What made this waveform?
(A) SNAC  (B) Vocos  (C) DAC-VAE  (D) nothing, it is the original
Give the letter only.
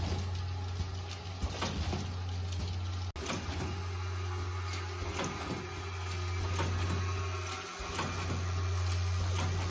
D